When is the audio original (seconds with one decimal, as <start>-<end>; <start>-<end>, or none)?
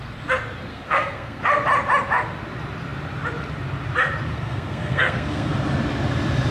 0.0-0.7; 1.4-4.3; 5.5-6.5